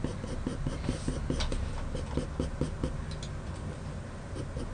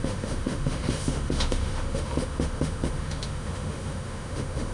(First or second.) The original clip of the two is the first